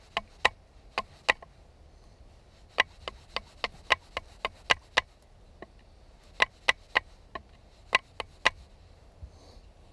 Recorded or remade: recorded